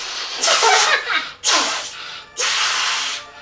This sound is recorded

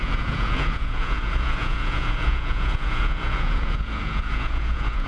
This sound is remade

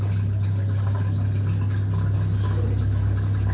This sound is recorded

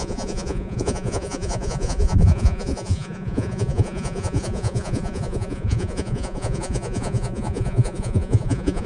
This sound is remade